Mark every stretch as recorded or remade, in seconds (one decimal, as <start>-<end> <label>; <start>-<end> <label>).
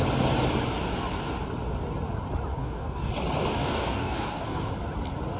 0.0-2.5 recorded; 2.5-3.1 remade; 3.1-3.6 recorded; 3.6-4.7 remade; 4.7-5.4 recorded